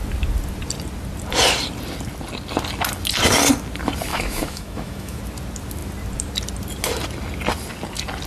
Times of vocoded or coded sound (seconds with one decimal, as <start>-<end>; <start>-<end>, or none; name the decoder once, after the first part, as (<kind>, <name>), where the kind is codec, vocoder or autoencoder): 4.1-5.2 (autoencoder, DAC-VAE)

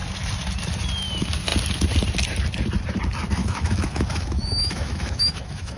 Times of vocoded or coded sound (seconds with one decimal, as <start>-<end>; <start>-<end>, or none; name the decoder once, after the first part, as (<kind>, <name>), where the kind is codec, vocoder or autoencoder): 3.4-5.8 (autoencoder, DAC-VAE)